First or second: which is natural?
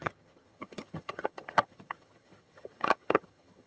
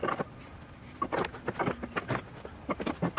second